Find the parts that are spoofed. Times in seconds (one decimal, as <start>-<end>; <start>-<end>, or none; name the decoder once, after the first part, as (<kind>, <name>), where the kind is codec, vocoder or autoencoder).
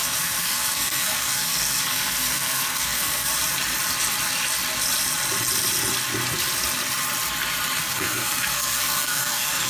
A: 0.0-3.3 (codec, SNAC); 7.8-9.7